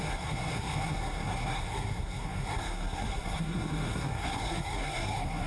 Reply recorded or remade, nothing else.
remade